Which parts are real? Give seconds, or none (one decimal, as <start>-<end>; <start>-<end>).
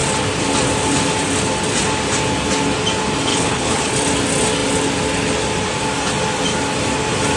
0.0-3.3; 3.9-7.4